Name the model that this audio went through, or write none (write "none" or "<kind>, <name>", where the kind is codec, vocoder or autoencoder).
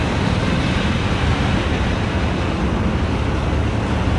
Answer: none